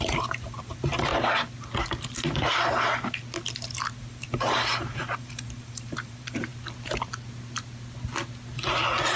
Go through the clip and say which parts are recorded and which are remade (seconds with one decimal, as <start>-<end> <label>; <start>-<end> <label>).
0.0-1.1 remade; 1.1-4.0 recorded; 4.0-6.5 remade; 6.5-9.2 recorded